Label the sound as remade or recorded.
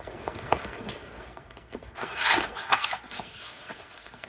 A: remade